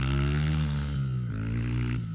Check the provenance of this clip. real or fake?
real